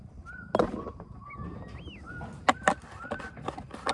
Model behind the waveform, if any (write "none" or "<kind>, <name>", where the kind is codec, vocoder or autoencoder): none